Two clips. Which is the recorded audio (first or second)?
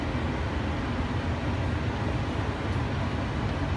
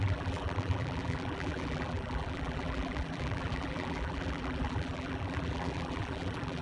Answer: first